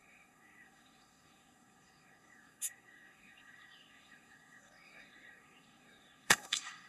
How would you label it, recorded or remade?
remade